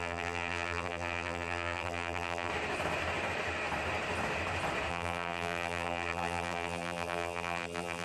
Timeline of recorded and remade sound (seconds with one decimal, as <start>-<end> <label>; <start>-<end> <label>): 0.0-2.5 remade; 2.5-4.9 recorded; 4.9-8.0 remade